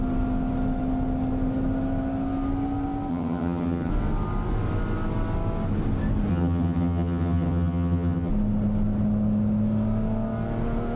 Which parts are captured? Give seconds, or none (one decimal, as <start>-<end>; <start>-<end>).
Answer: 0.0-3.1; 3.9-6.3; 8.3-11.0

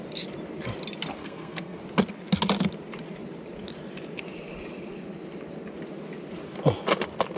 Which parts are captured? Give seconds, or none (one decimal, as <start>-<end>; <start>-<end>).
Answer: 0.0-1.2; 1.8-7.4

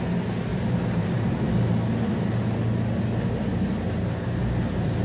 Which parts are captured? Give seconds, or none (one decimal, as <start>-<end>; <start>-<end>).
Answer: 0.0-0.5; 1.3-5.0

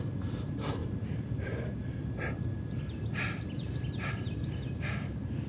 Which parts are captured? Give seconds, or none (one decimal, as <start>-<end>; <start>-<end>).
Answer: 0.0-5.5

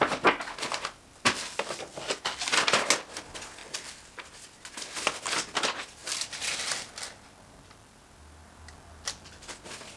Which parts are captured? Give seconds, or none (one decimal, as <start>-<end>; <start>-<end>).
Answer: 0.0-1.1; 2.5-3.6; 4.3-6.0; 8.0-8.4; 9.4-10.0

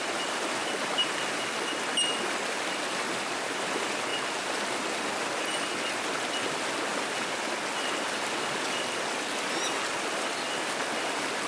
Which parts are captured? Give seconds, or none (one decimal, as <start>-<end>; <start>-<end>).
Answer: 0.0-0.6; 1.5-11.5

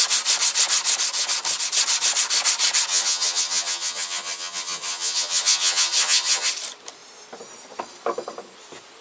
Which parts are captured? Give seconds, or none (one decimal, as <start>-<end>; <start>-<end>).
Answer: 0.0-2.9; 6.5-9.0

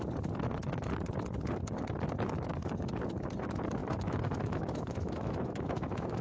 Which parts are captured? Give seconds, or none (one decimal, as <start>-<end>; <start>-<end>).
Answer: 0.0-3.8